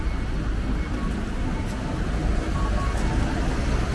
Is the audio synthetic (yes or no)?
no